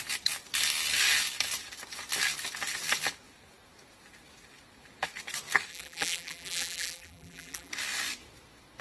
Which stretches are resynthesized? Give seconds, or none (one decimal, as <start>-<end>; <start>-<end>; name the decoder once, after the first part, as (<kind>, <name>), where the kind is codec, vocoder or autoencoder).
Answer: 5.7-7.7 (vocoder, BigVGAN v2)

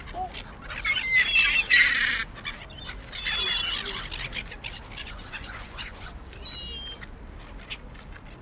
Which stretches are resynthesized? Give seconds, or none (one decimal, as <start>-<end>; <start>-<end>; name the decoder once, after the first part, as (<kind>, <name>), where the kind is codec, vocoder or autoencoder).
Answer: 5.0-6.1 (vocoder, Vocos)

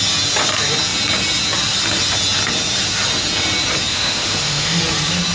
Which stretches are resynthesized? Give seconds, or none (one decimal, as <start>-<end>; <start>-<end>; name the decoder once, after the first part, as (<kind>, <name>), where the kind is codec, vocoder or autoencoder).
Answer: 3.9-4.8 (autoencoder, DAC-VAE)

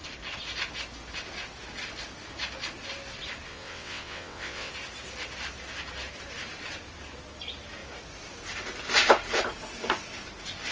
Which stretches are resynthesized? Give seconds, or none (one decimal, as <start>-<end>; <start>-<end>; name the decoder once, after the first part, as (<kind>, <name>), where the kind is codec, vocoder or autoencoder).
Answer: 3.5-4.7 (vocoder, WaveNeXt)

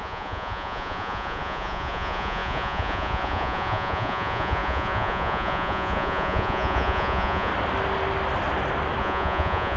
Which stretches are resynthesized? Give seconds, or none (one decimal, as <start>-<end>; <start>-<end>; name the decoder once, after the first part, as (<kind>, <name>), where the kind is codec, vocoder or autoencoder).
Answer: 0.0-7.5 (vocoder, Vocos); 9.0-9.8

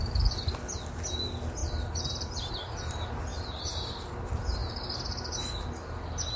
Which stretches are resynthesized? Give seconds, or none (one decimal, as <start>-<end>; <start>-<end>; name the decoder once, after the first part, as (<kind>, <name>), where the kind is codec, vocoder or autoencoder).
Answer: none